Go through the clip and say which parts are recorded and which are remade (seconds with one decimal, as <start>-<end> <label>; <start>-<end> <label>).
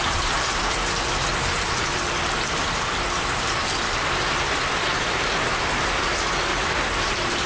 0.0-0.6 remade; 0.6-1.4 recorded; 1.4-3.7 remade; 3.7-6.5 recorded; 6.5-7.5 remade